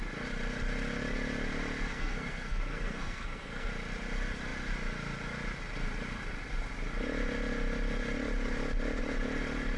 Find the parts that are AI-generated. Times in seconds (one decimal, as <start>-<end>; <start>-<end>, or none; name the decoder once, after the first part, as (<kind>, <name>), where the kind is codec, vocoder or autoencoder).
1.9-3.7 (codec, SNAC)

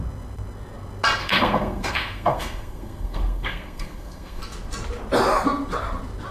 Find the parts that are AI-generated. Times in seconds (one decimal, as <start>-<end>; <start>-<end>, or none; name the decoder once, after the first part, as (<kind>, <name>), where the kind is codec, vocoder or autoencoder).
1.2-4.4 (codec, SNAC)

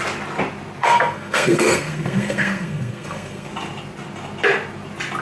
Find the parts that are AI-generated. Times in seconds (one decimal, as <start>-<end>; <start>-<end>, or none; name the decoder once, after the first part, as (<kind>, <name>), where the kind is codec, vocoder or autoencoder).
0.8-3.5 (codec, SNAC)